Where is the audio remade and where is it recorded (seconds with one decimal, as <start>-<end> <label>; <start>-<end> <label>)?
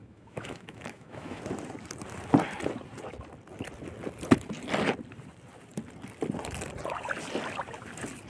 0.0-1.4 remade; 1.4-8.3 recorded